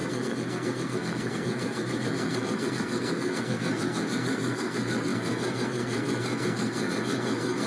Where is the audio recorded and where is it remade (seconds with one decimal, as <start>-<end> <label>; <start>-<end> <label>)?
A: 0.0-7.7 remade